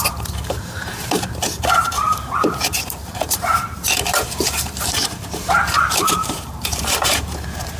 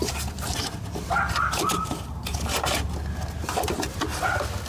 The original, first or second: second